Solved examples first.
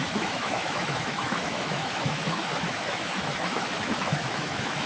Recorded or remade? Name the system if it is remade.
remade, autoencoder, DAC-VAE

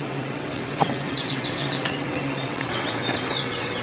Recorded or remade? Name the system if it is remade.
remade, vocoder, WaveNeXt